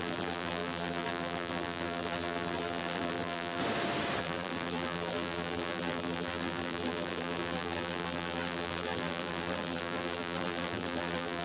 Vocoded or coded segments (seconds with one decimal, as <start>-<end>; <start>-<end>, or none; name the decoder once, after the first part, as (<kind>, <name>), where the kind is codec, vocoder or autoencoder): 0.0-3.6 (vocoder, BigVGAN v2); 4.2-11.4